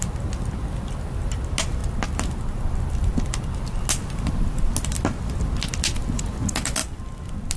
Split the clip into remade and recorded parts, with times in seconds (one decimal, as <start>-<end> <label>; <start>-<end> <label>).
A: 0.0-7.6 recorded